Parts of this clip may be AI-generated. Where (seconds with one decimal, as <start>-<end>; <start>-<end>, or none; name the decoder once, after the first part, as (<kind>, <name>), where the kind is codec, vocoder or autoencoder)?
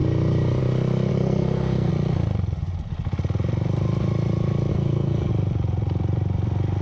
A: 1.1-1.9 (codec, SNAC); 4.7-5.3